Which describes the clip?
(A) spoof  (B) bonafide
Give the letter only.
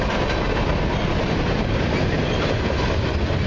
B